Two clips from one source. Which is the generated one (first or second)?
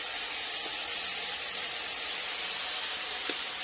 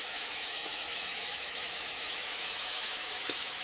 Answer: second